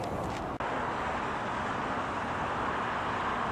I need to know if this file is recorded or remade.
recorded